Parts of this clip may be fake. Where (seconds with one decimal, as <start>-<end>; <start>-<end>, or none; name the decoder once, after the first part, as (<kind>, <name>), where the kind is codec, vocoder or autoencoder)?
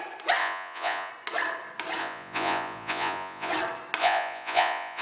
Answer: 0.4-1.1 (vocoder, Vocos); 2.0-3.5; 4.0-5.0